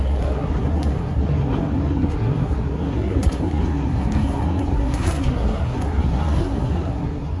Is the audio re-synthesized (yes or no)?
yes